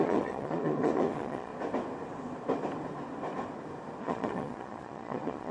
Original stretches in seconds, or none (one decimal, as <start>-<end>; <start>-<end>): 1.5-4.0